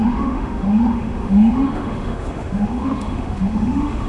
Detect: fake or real fake